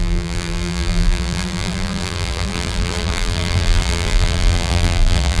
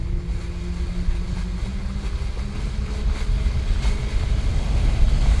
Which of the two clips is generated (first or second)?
first